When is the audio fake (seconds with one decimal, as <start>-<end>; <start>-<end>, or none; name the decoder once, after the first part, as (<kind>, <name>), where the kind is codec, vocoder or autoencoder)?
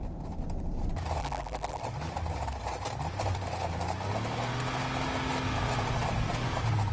1.2-1.8 (vocoder, BigVGAN v2)